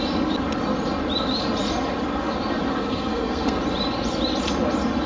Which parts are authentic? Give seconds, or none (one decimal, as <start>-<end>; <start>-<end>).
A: 0.0-2.7; 3.6-5.1